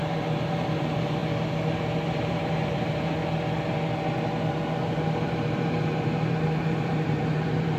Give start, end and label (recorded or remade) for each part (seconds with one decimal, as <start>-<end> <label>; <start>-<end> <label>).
0.0-1.2 remade; 1.2-1.8 recorded; 1.8-3.2 remade; 3.2-4.8 recorded; 4.8-7.8 remade